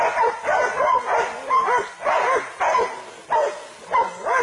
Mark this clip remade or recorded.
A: recorded